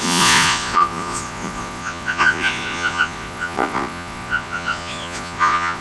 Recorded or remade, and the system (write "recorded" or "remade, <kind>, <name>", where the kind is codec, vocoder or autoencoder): remade, vocoder, Vocos